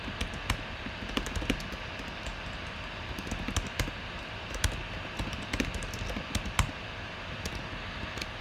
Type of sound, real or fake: real